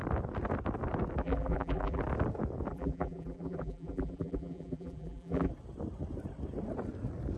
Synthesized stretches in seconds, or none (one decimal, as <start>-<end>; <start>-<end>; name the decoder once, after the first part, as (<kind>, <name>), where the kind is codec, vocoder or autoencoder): 1.2-2.0 (vocoder, BigVGAN v2); 2.7-5.5